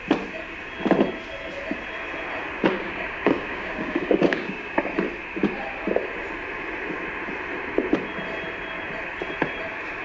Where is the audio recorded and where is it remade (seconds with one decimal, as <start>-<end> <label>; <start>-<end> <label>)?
0.0-2.5 recorded; 2.5-4.8 remade; 4.8-10.0 recorded